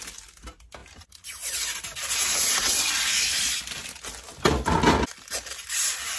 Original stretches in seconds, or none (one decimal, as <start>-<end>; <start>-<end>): 0.0-6.2